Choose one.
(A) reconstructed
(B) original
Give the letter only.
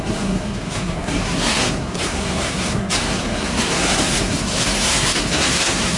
A